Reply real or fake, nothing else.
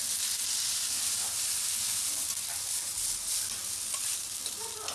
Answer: fake